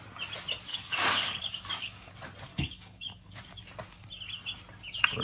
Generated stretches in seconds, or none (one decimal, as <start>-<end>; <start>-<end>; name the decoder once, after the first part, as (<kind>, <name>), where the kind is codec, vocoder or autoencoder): 0.7-2.1 (codec, DAC); 2.5-3.6